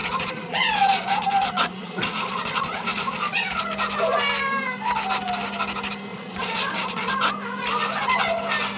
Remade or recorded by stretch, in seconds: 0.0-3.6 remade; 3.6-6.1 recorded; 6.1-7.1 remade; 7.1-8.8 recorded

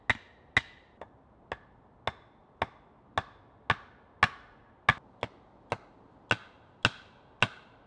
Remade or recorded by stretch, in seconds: 0.0-7.9 recorded